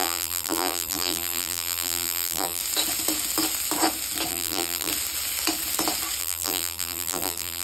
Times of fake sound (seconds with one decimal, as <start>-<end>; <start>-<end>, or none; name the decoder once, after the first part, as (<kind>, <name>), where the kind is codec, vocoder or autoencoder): 0.0-2.6 (vocoder, BigVGAN v2); 4.3-4.9; 6.2-7.6